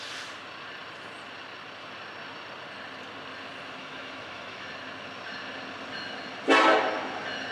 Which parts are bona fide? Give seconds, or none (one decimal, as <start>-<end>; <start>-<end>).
0.0-3.8; 4.7-7.5